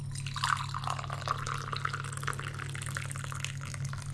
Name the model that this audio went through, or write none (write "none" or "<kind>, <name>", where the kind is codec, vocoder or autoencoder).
none